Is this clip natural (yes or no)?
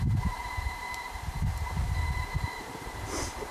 no